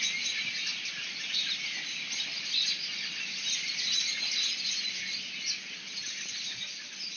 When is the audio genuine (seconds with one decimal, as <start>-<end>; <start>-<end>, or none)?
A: 0.0-7.2